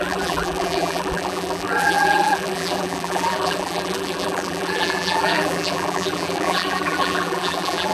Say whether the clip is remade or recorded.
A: remade